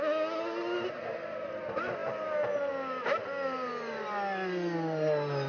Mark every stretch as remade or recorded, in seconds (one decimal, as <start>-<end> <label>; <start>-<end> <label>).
0.0-5.5 recorded